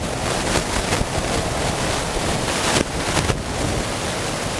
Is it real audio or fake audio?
real